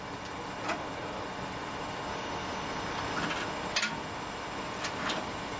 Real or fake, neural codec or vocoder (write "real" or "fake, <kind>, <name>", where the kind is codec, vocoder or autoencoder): real